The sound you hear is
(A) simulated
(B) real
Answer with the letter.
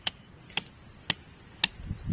B